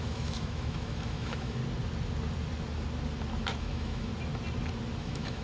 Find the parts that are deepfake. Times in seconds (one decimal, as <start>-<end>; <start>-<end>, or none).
0.0-1.6; 3.6-4.1; 5.0-5.4